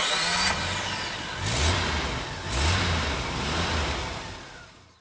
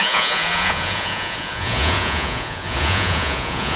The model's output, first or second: second